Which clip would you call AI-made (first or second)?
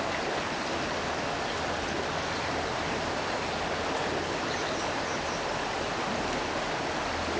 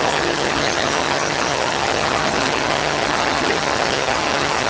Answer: second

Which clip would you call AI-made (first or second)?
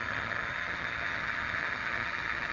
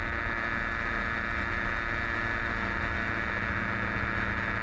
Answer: first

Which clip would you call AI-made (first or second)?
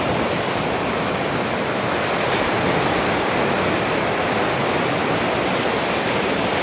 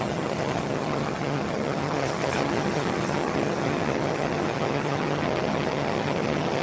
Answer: second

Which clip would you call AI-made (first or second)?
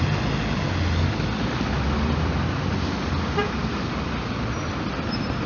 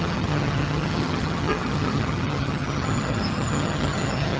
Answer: second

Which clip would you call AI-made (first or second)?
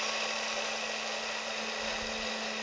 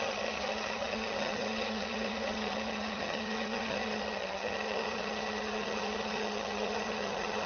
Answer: second